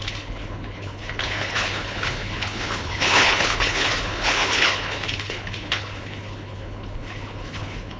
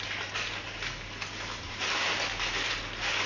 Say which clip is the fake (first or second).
first